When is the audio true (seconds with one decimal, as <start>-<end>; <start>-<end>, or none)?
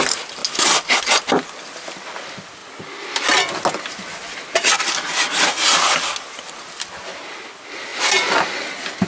0.0-9.1